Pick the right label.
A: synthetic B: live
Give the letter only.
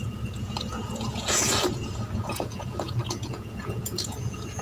A